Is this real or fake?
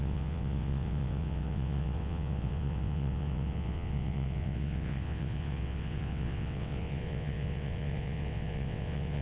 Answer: fake